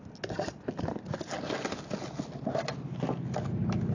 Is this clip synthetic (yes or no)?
no